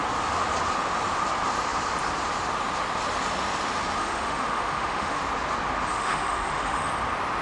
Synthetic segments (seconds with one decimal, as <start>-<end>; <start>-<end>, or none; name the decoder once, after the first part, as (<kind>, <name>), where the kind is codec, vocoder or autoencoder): 4.0-5.2 (autoencoder, DAC-VAE); 5.9-6.9